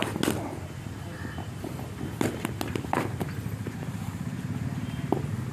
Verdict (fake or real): real